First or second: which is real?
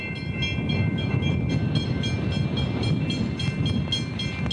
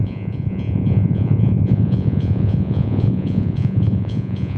first